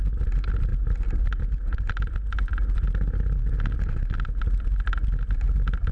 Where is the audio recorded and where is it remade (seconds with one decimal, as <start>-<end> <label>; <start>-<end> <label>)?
0.0-5.9 recorded